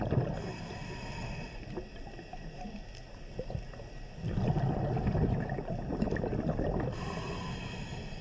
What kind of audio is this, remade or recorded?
recorded